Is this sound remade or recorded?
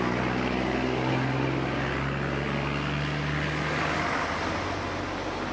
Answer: recorded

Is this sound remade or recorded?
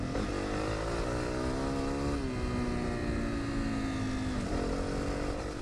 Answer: recorded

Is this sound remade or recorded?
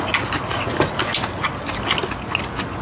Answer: recorded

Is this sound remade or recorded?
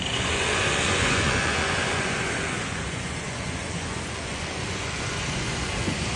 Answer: remade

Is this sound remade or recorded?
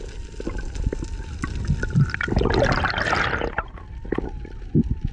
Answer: recorded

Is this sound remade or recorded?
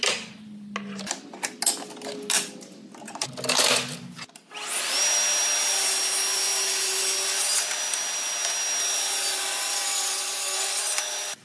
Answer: recorded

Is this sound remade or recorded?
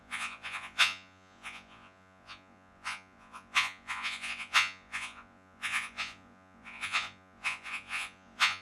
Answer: remade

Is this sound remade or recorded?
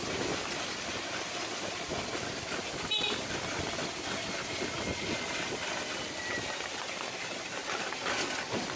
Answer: recorded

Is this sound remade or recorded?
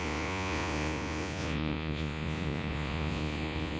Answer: remade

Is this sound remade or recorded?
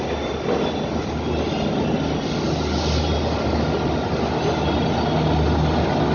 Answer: recorded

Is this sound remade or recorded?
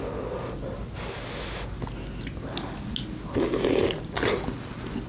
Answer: recorded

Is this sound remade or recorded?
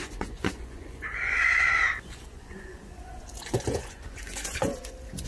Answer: remade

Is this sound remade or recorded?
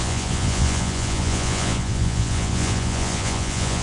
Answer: remade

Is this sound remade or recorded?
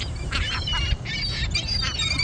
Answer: recorded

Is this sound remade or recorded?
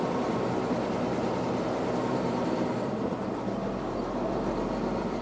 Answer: recorded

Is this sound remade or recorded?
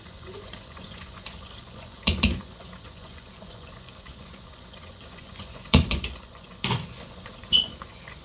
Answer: remade